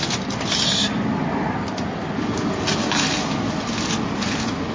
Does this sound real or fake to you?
real